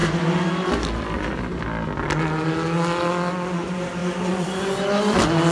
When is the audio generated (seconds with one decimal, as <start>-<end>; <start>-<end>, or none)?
4.0-4.5